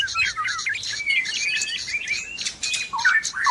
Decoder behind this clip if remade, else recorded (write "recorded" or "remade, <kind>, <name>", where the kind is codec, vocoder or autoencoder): recorded